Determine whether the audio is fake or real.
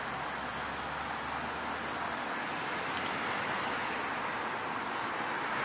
real